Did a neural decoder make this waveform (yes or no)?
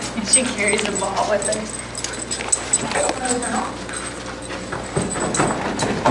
no